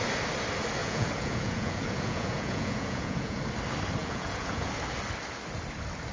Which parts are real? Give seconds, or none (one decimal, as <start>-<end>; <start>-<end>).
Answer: 0.0-0.8; 3.4-4.0; 4.7-6.1